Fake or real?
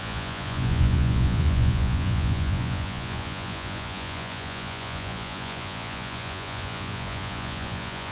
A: fake